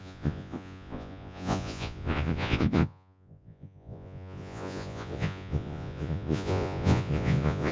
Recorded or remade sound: remade